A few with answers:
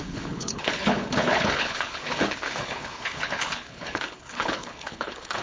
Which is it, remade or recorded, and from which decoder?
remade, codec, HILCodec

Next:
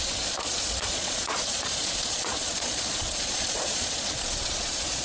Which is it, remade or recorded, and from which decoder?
remade, vocoder, Vocos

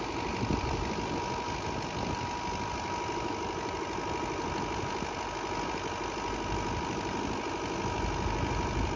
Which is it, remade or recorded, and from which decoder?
recorded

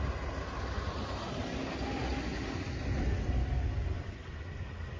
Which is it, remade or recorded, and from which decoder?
recorded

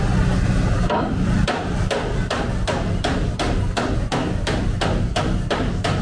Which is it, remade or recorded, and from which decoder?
recorded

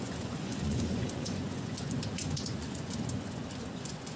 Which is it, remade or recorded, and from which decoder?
remade, vocoder, Vocos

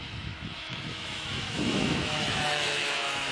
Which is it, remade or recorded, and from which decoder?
remade, autoencoder, DAC-VAE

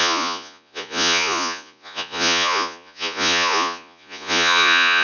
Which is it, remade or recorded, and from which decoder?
remade, vocoder, Vocos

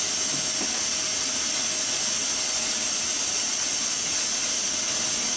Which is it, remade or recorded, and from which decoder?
recorded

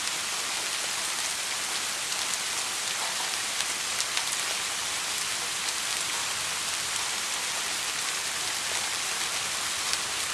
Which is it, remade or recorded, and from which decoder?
recorded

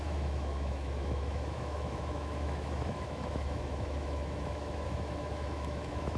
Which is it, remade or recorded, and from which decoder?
remade, autoencoder, DAC-VAE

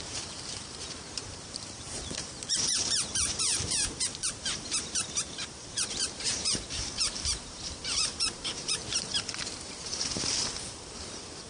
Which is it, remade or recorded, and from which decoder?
remade, vocoder, BigVGAN v2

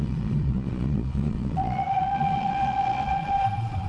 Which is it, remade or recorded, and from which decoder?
remade, vocoder, Vocos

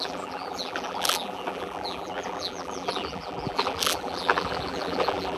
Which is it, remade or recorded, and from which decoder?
remade, vocoder, BigVGAN v2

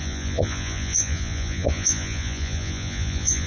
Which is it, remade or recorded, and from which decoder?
remade, vocoder, Vocos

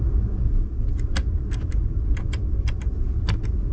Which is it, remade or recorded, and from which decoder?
recorded